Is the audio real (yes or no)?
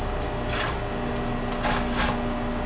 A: yes